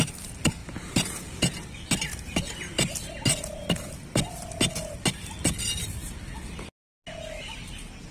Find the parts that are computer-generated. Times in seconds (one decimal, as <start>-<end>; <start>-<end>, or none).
none